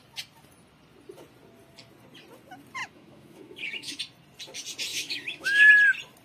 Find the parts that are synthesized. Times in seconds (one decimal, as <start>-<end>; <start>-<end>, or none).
2.8-4.0; 4.9-5.7

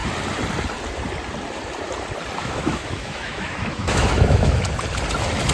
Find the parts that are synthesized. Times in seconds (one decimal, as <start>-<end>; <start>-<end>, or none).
2.4-4.6

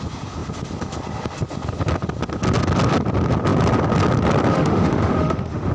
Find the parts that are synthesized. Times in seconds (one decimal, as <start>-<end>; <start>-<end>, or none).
4.5-5.7

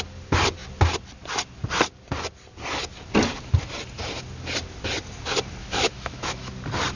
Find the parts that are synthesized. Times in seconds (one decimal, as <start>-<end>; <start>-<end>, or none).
5.6-6.5

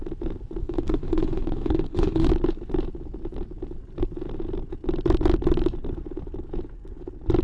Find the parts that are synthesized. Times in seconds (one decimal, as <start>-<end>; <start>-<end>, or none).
0.6-2.3

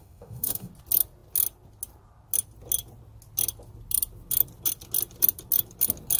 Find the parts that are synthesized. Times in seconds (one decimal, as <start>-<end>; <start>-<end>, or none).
0.0-0.7